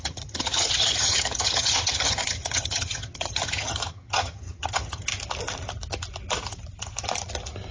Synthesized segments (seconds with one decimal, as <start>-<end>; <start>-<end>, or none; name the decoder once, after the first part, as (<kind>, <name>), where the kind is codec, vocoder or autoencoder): 0.0-5.1 (vocoder, HiFi-GAN)